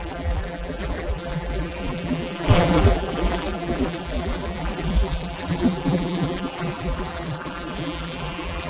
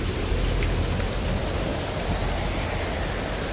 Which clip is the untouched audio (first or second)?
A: second